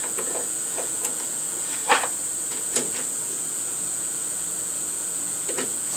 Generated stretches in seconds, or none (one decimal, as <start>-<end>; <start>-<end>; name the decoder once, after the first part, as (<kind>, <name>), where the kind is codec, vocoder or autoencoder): 0.0-1.8 (vocoder, Vocos); 2.5-6.0